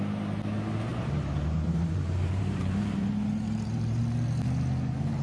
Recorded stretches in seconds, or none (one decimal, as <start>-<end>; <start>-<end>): 0.0-0.9; 4.0-5.2